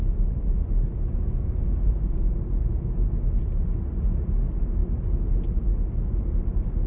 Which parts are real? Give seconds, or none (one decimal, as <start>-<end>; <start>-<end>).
0.0-6.9